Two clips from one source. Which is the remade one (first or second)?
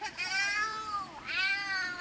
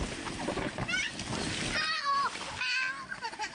first